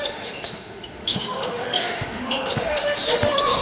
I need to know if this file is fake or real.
fake